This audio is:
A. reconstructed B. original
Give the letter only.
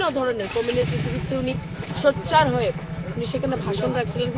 A